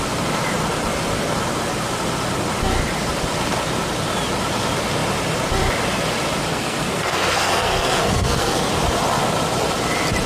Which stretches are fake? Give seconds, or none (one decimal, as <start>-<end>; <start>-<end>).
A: 6.5-8.7